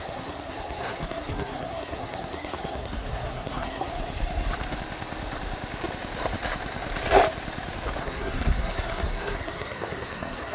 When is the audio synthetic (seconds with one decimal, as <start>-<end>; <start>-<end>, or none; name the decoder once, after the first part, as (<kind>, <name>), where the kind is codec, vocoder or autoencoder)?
0.0-3.9 (codec, SNAC); 8.0-10.5